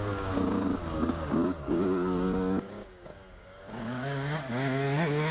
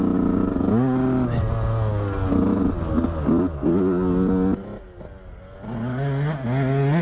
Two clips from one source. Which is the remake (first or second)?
first